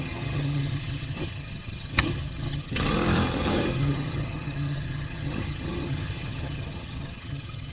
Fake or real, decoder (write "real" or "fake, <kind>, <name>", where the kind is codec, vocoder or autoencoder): fake, vocoder, HiFi-GAN